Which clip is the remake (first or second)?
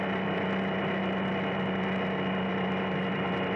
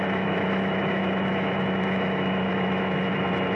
second